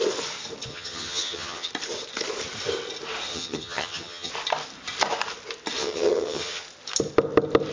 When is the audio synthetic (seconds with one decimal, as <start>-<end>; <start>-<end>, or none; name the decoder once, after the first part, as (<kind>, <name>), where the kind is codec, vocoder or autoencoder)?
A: 0.7-1.7 (vocoder, HiFi-GAN); 3.3-4.3; 5.8-6.6